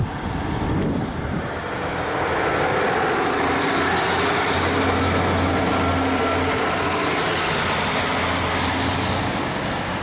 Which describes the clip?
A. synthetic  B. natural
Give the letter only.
B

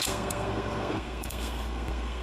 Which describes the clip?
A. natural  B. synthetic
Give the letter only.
B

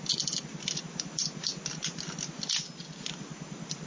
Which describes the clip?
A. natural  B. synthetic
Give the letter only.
A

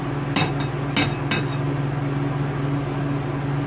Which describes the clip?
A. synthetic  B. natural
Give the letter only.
B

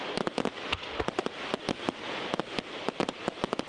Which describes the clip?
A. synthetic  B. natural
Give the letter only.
B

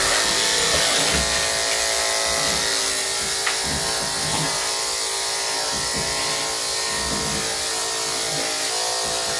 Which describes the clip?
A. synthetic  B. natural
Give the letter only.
B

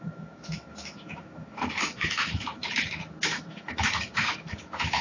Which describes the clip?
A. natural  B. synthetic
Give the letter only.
B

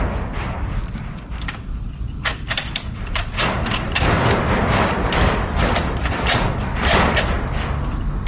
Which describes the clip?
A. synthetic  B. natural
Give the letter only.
A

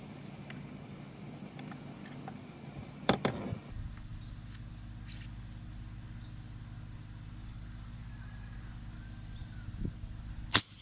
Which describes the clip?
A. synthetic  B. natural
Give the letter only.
B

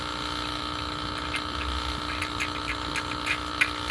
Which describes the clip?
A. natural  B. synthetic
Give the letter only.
A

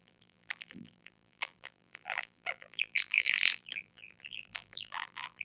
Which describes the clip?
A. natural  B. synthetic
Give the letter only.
B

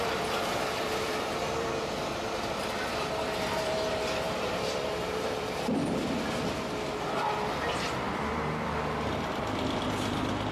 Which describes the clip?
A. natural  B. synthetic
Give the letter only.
B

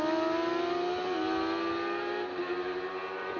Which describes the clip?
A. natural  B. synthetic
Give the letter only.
A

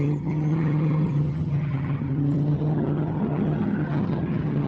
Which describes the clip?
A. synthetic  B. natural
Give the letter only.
A